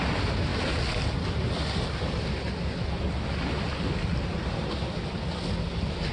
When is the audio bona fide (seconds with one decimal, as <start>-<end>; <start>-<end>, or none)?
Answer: 0.0-6.1